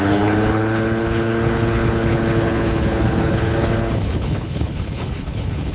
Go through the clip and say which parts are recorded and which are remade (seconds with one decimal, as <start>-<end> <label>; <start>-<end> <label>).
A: 0.0-5.7 remade